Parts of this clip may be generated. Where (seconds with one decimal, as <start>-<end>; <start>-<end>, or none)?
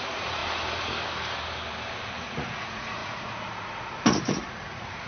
0.0-0.4; 2.2-5.1